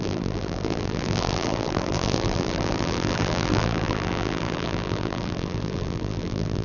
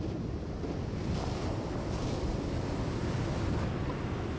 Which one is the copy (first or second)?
first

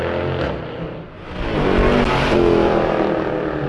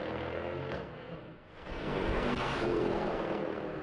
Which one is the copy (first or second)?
second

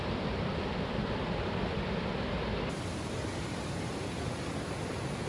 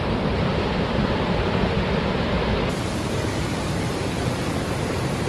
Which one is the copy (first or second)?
second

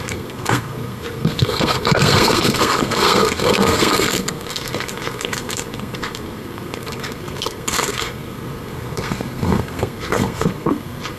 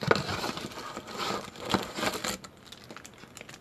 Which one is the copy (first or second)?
first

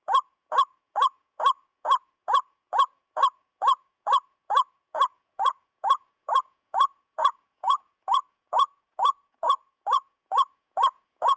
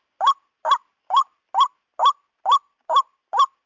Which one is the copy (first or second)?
first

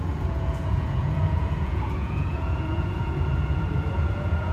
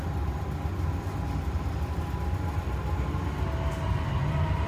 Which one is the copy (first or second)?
first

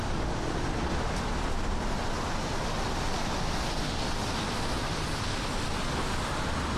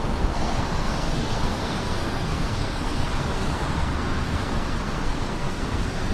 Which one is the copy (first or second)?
second